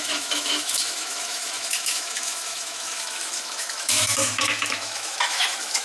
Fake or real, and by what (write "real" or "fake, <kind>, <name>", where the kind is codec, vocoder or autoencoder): fake, autoencoder, DAC-VAE